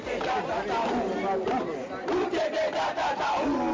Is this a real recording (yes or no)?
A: yes